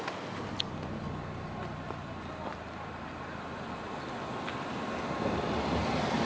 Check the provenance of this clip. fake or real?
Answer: real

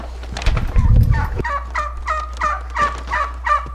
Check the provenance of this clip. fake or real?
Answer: real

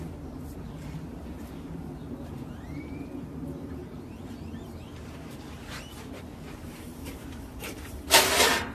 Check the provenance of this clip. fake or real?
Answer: fake